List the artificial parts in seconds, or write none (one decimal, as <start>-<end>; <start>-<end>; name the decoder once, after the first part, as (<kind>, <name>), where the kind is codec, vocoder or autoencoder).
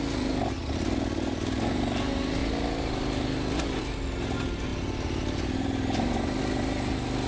none